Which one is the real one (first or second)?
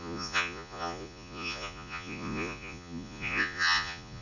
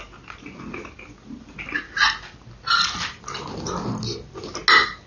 second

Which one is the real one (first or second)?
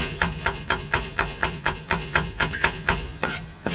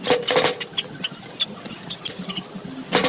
second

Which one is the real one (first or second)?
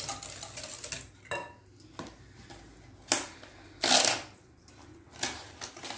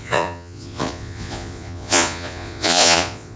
first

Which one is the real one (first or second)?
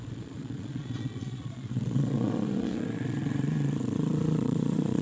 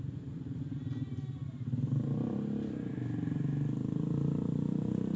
second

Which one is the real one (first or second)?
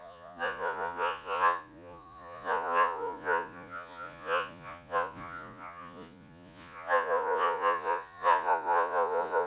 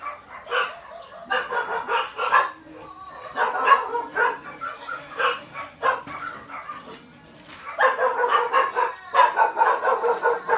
second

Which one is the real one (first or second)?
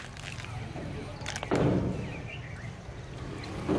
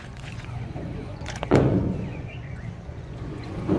first